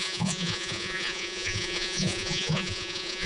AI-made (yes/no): yes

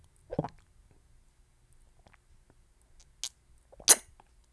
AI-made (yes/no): no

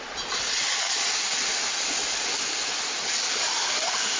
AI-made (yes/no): no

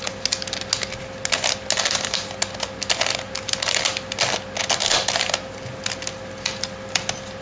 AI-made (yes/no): no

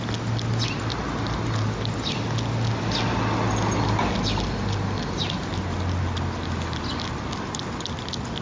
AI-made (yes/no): no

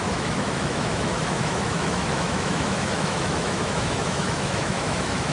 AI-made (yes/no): yes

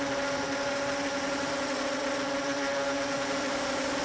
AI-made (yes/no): no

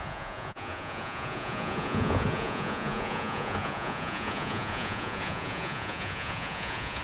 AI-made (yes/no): yes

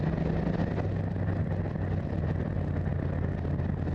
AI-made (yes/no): no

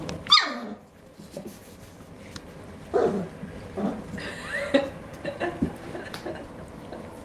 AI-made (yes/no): no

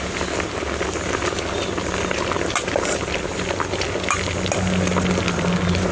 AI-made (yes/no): no